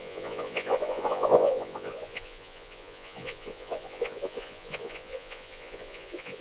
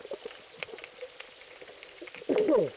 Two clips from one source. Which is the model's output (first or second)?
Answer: first